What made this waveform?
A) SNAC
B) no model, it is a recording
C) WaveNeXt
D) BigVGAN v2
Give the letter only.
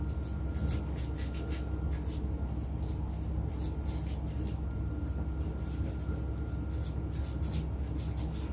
B